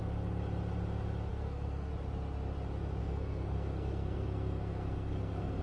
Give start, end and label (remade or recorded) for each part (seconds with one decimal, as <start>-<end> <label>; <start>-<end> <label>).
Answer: 0.0-1.3 recorded; 1.3-1.9 remade; 1.9-3.0 recorded; 3.0-5.6 remade